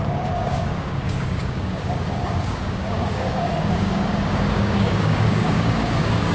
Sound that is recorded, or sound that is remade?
remade